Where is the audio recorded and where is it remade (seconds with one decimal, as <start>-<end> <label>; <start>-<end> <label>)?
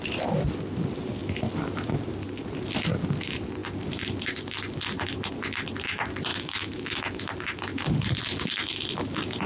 0.0-6.3 recorded; 6.3-7.3 remade; 7.3-9.5 recorded